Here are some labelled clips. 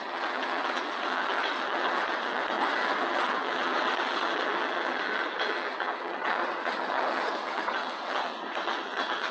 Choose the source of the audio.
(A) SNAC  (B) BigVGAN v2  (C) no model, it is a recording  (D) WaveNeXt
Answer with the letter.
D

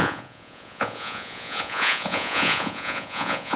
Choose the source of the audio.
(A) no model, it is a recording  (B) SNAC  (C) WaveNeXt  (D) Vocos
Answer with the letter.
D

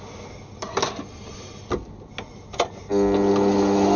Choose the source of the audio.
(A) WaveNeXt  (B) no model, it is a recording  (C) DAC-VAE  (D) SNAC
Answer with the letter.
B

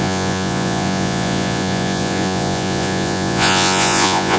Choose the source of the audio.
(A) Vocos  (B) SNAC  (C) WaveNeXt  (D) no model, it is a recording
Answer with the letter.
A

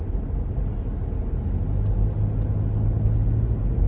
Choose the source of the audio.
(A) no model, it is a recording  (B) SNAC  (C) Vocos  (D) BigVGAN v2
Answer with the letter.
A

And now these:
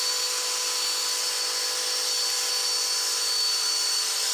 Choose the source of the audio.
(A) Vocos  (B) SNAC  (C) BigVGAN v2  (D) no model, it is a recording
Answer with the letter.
D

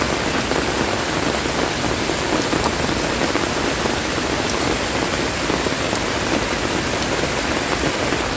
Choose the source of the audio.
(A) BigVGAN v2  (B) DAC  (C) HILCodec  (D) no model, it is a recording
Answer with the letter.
D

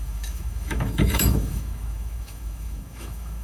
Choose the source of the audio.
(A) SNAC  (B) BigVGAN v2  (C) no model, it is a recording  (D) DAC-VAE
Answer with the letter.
D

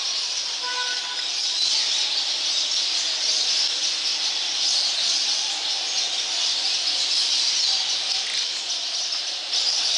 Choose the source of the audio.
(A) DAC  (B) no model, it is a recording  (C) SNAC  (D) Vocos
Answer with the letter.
B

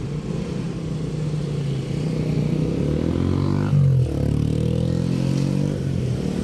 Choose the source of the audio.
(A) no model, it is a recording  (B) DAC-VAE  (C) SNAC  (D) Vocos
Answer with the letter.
A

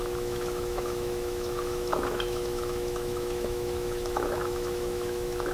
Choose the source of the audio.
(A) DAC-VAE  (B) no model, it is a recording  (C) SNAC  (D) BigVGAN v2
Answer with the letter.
A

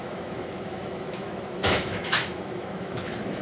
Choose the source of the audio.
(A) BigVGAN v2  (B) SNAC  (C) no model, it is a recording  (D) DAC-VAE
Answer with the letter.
D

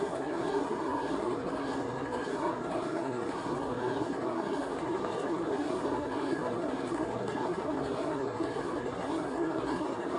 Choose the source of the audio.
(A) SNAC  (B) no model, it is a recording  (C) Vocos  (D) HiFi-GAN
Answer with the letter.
A